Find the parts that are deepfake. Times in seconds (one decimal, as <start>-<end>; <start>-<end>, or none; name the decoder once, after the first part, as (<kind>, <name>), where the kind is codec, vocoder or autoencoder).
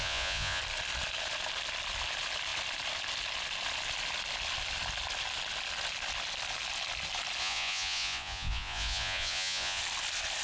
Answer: 0.0-0.6 (vocoder, Vocos); 7.4-9.8